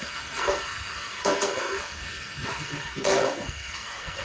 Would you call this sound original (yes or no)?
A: no